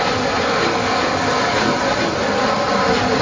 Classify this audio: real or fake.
real